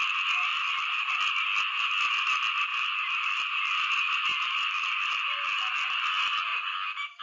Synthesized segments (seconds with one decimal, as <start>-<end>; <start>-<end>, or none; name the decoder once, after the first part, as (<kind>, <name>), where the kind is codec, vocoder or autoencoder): 0.5-1.1 (vocoder, BigVGAN v2); 2.7-3.7; 4.3-6.0; 6.5-7.2